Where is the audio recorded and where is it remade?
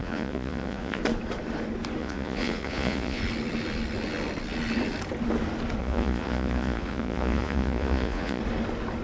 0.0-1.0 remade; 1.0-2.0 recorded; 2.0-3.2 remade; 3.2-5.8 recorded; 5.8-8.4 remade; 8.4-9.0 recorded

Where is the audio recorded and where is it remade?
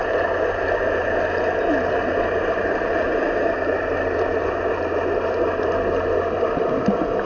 0.0-7.2 recorded